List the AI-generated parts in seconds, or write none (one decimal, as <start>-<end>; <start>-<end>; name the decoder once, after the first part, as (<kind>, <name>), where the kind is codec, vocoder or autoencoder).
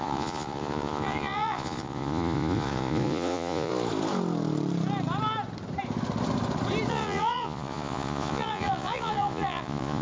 0.0-3.7 (vocoder, Vocos); 6.9-10.0